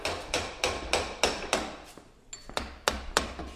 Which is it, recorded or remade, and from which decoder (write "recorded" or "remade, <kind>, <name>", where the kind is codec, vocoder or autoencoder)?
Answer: recorded